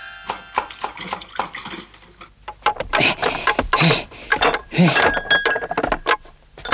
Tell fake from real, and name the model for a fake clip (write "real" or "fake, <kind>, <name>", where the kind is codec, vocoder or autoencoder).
real